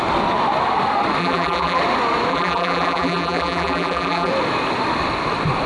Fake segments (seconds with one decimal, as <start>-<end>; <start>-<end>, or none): 1.2-1.8; 2.3-4.3